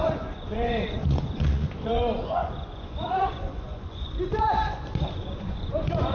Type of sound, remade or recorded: remade